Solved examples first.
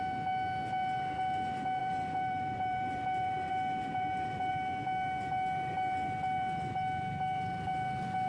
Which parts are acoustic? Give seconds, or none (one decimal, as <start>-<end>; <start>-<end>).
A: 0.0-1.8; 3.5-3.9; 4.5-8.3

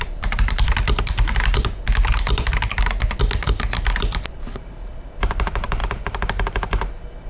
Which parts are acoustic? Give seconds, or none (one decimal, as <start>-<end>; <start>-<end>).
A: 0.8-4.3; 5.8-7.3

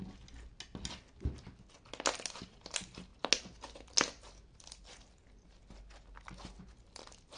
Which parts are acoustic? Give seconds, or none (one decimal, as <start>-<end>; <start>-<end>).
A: 0.0-7.4

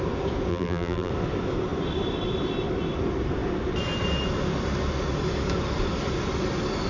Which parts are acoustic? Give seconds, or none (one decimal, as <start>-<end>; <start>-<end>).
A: 0.0-0.5; 1.1-6.9

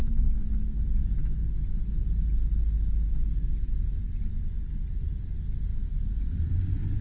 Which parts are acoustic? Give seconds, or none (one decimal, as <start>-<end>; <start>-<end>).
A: 0.0-5.7; 6.5-7.0

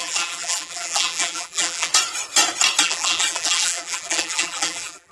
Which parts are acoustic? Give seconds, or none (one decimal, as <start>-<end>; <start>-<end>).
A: 1.9-2.8

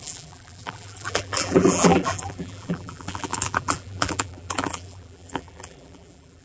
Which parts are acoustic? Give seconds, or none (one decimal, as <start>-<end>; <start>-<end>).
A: none

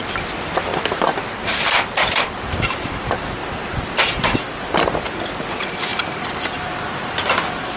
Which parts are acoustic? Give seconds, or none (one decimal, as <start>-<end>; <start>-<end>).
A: 0.0-7.8